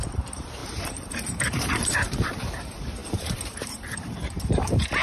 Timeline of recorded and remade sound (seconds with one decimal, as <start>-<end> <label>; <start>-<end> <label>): 0.0-5.0 remade